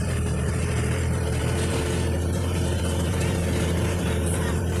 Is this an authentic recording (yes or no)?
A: no